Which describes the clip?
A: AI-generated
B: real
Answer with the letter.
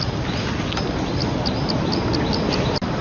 B